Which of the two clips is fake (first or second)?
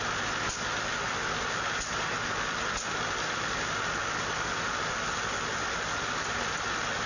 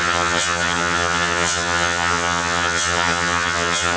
second